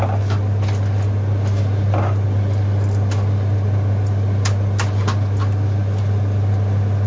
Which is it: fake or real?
real